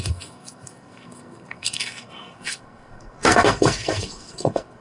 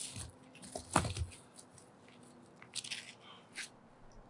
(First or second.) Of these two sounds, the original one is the second